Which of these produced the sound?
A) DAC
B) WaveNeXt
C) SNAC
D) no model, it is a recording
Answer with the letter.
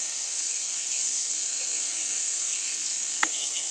C